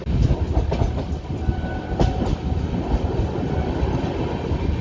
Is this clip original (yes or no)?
yes